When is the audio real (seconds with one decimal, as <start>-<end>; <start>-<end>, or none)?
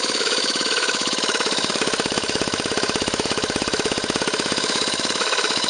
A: none